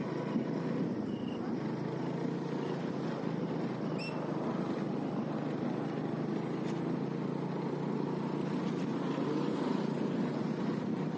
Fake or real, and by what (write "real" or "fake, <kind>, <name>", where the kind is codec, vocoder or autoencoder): real